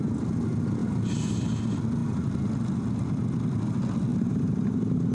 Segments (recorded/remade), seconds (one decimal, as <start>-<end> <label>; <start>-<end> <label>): 0.0-4.1 recorded; 4.1-5.1 remade